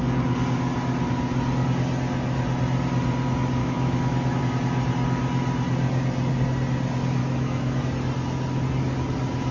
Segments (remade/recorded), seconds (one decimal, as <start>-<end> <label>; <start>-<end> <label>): 0.0-3.6 recorded; 3.6-4.4 remade; 4.4-7.2 recorded; 7.2-7.8 remade; 7.8-9.5 recorded